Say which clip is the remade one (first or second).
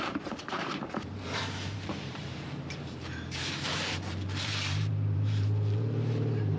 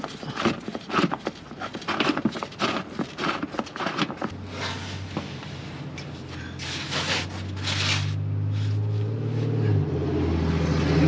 first